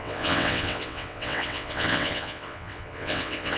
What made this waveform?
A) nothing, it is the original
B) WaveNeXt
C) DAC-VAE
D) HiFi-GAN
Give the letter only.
B